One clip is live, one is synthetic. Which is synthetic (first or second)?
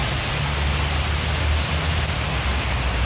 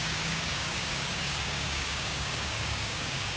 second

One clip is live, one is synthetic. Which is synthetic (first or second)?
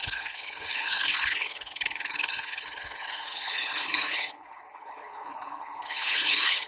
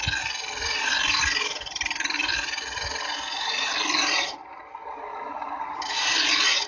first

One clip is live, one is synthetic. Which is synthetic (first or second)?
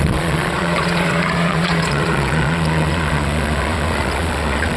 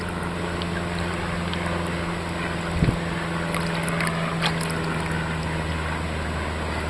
first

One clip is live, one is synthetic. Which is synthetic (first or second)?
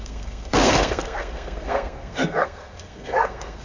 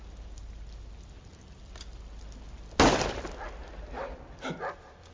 first